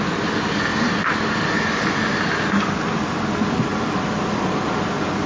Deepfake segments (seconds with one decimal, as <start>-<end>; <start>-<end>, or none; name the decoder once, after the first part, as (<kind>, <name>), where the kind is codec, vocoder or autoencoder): 3.7-4.8 (vocoder, BigVGAN v2)